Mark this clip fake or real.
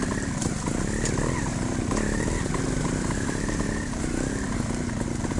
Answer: real